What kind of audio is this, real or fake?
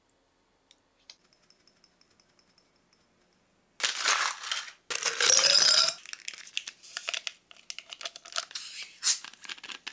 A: real